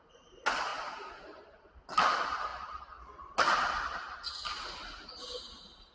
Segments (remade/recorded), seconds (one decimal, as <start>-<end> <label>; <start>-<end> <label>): 0.0-5.9 recorded